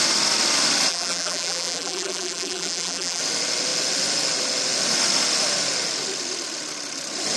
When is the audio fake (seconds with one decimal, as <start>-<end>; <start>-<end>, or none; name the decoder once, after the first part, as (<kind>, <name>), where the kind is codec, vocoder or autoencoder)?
0.9-3.2 (vocoder, BigVGAN v2)